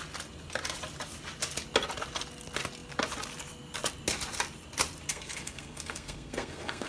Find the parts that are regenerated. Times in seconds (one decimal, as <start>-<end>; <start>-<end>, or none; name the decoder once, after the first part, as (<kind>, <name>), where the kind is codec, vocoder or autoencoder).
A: 5.1-6.9 (codec, SNAC)